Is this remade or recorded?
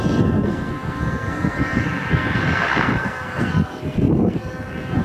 remade